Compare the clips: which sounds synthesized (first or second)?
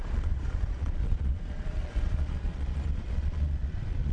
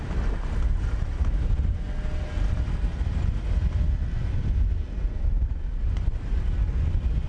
first